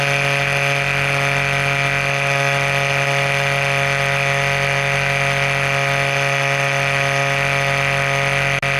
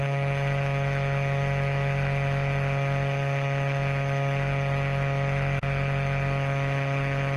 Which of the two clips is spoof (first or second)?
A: second